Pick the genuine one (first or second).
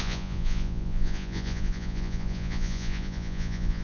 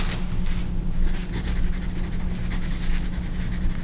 second